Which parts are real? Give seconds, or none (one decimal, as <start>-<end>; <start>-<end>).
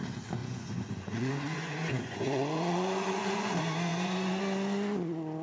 0.0-0.4; 3.5-3.9; 4.4-5.4